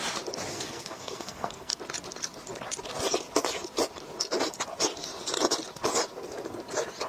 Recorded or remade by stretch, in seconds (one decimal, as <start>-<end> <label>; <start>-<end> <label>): 0.0-0.5 recorded; 0.5-1.8 remade; 1.8-7.1 recorded